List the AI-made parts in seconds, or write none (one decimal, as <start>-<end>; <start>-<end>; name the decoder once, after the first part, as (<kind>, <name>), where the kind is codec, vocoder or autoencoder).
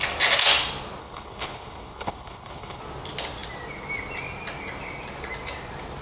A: 1.0-2.8 (codec, HILCodec)